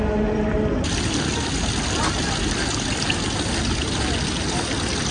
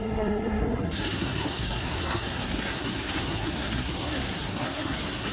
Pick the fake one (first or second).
second